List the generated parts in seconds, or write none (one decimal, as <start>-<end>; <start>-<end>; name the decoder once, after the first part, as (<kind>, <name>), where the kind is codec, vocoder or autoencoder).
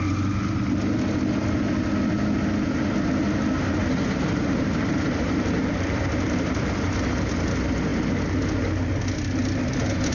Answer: 3.8-6.9 (vocoder, BigVGAN v2)